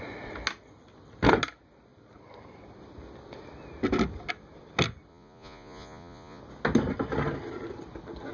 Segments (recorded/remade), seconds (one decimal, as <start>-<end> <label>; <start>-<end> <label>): 0.0-5.1 recorded; 5.1-6.4 remade; 6.4-8.3 recorded